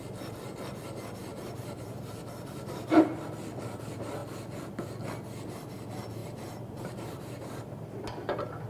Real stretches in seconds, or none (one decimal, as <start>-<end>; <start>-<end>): 0.0-1.3; 3.1-6.2; 7.8-8.7